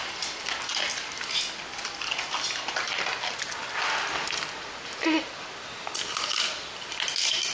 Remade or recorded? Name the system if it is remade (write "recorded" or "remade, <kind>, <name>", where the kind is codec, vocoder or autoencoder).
recorded